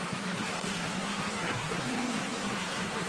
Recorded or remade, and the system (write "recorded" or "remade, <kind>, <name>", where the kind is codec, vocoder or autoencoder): remade, codec, SNAC